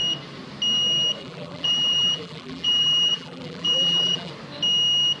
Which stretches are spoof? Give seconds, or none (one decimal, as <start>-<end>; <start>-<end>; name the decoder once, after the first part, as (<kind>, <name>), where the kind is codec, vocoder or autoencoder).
1.2-4.3 (vocoder, BigVGAN v2)